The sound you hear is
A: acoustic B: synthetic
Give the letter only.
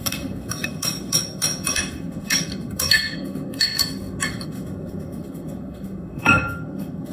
B